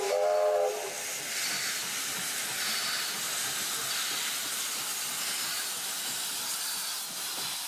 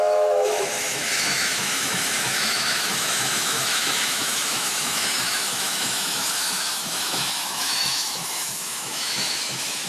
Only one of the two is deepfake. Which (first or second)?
second